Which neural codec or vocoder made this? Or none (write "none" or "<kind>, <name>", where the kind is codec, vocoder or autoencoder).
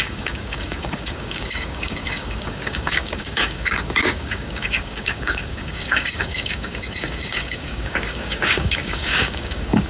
codec, DAC